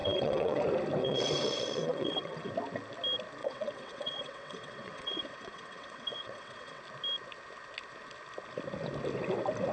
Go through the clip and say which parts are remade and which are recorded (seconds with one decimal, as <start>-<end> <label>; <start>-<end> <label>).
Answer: 0.0-0.6 remade; 0.6-1.0 recorded; 1.0-2.5 remade; 2.5-3.4 recorded; 3.4-6.8 remade; 6.8-9.7 recorded